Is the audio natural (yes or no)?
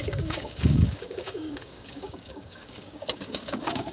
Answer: no